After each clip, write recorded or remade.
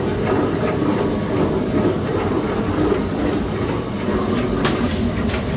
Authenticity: recorded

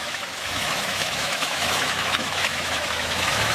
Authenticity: remade